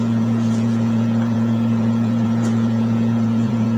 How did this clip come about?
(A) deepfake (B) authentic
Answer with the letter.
A